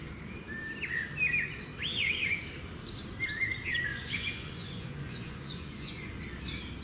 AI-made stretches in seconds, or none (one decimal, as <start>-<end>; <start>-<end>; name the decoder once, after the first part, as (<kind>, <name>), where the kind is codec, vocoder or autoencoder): 1.9-2.4 (vocoder, Vocos); 3.9-6.1